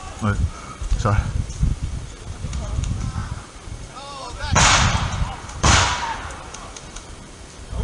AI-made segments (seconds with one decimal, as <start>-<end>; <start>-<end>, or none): 0.0-7.8